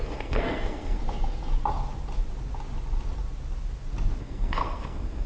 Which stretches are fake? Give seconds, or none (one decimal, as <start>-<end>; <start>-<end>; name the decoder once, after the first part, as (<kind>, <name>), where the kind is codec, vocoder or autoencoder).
0.0-1.0 (codec, SNAC); 4.2-5.3